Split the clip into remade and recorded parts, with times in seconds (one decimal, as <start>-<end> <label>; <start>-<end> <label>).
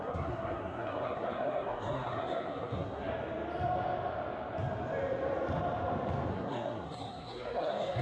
0.0-3.1 remade; 3.1-6.3 recorded; 6.3-8.0 remade